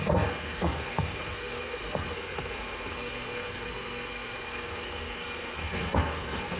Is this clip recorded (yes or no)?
no